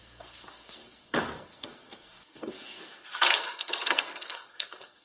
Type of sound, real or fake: fake